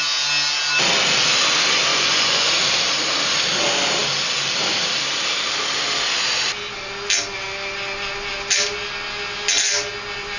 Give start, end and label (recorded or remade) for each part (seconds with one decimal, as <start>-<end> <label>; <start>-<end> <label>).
0.0-1.9 recorded; 1.9-2.5 remade; 2.5-10.4 recorded